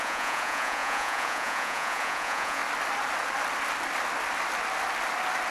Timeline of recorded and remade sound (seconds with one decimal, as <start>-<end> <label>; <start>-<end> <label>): 0.0-2.6 remade; 2.6-5.5 recorded